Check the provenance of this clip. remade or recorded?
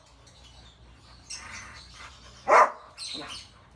recorded